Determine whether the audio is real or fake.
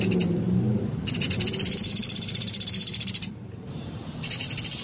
fake